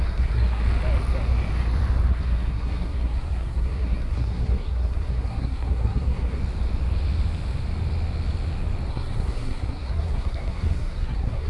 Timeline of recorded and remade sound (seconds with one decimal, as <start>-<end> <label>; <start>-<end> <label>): 0.0-0.6 remade; 0.6-2.1 recorded; 2.1-6.4 remade; 6.4-8.9 recorded; 8.9-11.5 remade